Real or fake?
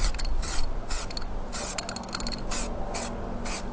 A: real